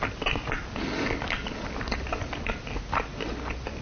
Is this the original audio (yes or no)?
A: yes